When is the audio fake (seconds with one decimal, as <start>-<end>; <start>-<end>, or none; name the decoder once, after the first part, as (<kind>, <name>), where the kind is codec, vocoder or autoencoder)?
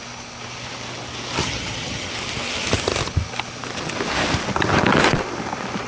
1.4-2.1 (vocoder, HiFi-GAN)